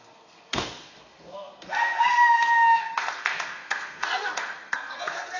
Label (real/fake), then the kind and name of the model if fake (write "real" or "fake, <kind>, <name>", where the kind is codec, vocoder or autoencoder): fake, codec, SNAC